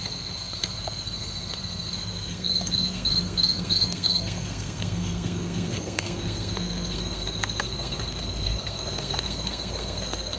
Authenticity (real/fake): fake